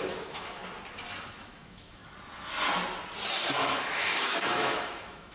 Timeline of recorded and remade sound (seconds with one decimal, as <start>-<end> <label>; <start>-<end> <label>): 0.0-0.6 remade; 0.6-1.3 recorded; 1.3-2.0 remade; 2.0-3.5 recorded; 3.5-5.3 remade